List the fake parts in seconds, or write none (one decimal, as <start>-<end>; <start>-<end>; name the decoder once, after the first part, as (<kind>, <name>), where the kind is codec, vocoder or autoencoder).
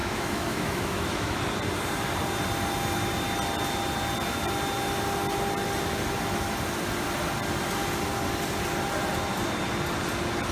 0.0-1.4 (autoencoder, DAC-VAE)